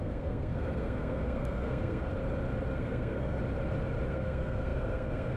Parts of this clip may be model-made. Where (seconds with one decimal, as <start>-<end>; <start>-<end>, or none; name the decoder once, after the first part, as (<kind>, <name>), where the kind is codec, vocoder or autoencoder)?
0.0-2.1 (codec, SNAC); 2.7-3.4; 4.1-5.4